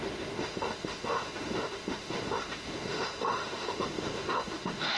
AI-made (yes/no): yes